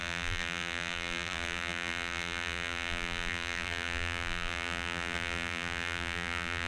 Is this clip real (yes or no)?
no